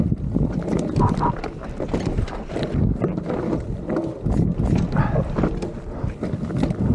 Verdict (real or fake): real